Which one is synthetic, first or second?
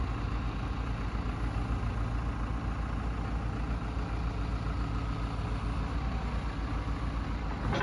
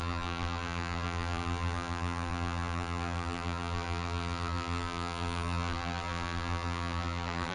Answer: second